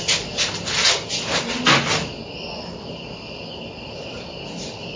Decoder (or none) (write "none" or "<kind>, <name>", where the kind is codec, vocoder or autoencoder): none